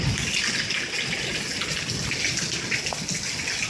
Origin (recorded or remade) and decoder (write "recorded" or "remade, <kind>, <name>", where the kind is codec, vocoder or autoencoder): recorded